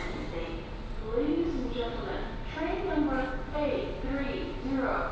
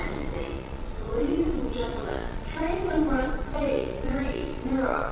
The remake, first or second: second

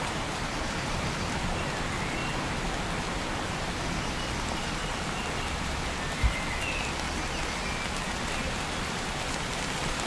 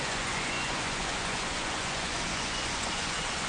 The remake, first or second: second